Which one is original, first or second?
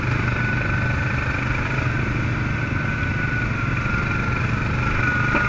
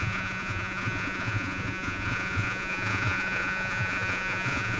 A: first